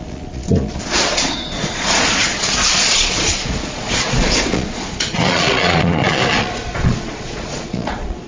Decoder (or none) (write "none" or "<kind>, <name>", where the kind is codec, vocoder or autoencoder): vocoder, Vocos